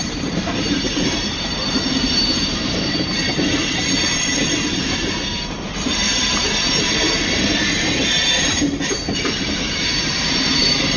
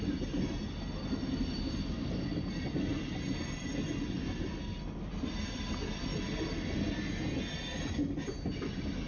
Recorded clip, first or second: second